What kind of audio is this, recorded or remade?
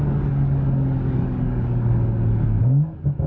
remade